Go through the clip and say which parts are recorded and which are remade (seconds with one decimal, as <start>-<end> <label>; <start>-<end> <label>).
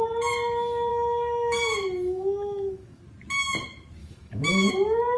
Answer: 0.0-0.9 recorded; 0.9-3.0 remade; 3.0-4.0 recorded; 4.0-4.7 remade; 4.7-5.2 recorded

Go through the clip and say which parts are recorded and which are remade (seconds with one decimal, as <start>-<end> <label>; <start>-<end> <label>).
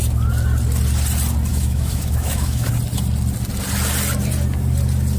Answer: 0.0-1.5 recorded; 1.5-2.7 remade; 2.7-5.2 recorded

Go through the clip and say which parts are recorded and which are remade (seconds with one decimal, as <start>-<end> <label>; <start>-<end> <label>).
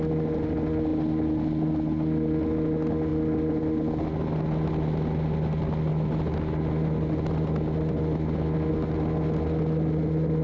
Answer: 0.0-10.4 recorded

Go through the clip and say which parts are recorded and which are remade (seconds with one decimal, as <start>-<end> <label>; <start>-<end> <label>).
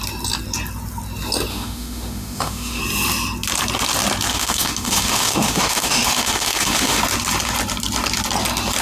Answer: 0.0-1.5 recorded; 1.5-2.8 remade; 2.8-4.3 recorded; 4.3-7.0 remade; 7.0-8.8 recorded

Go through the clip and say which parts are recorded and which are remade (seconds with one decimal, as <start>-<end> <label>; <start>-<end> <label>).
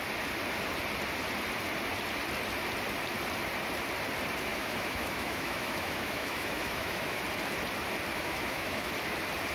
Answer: 0.0-4.5 recorded; 4.5-7.2 remade; 7.2-8.1 recorded; 8.1-8.9 remade; 8.9-9.5 recorded